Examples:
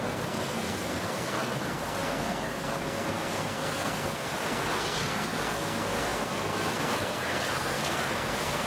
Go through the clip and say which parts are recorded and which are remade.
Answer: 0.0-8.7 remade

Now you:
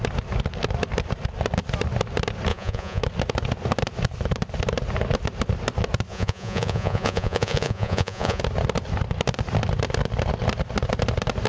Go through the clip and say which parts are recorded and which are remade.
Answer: 0.0-2.5 recorded; 2.5-3.0 remade; 3.0-6.1 recorded; 6.1-8.4 remade; 8.4-11.5 recorded

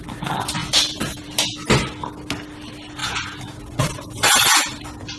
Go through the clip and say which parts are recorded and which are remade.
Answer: 0.0-0.6 recorded; 0.6-1.3 remade; 1.3-3.0 recorded; 3.0-4.8 remade; 4.8-5.2 recorded

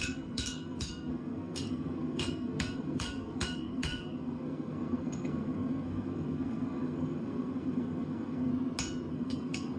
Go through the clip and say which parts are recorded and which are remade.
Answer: 0.0-8.5 remade; 8.5-9.1 recorded; 9.1-9.8 remade